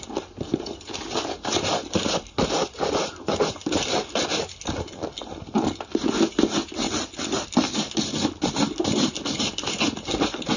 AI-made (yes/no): no